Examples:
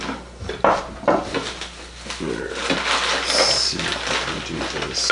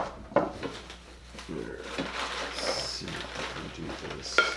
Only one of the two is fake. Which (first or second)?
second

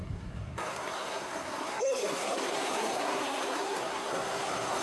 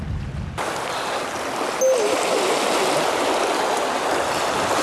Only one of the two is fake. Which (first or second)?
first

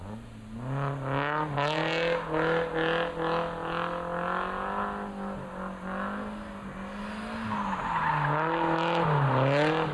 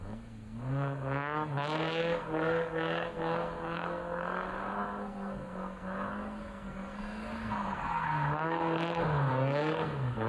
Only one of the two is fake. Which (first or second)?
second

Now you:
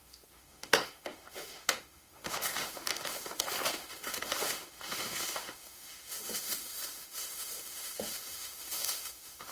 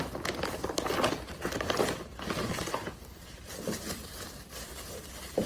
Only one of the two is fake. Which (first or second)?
first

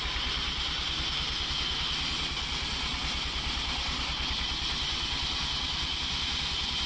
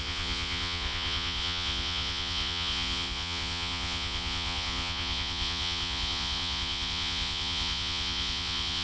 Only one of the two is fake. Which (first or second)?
second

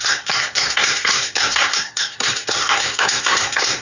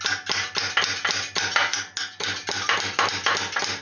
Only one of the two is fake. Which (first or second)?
first